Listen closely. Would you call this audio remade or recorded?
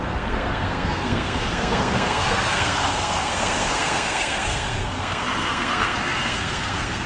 remade